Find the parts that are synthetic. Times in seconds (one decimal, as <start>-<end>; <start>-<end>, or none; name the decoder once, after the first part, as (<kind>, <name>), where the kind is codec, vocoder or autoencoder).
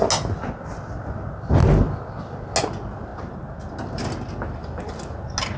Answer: none